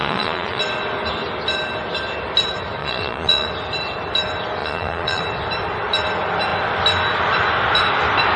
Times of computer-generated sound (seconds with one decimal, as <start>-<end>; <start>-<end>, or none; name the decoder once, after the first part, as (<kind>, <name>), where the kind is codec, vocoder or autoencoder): 0.0-0.6 (vocoder, Vocos); 2.8-3.5; 4.6-5.2